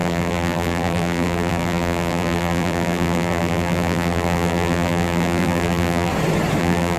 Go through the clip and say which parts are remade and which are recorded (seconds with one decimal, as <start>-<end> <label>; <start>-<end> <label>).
0.0-6.1 remade; 6.1-6.6 recorded; 6.6-7.0 remade